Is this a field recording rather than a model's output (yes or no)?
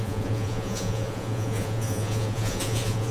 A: no